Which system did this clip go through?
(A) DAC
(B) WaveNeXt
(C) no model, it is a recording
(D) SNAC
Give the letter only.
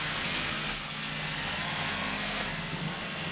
D